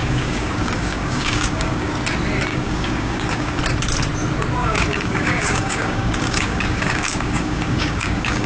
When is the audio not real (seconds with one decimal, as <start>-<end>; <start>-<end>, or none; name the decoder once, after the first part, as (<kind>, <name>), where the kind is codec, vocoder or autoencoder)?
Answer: 0.0-1.9 (codec, DAC); 2.5-3.6; 4.6-8.5